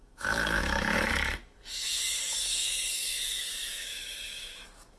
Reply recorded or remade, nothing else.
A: remade